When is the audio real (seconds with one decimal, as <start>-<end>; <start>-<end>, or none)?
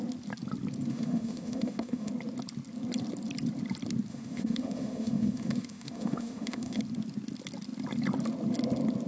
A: 0.0-0.9; 2.1-4.1; 6.8-9.1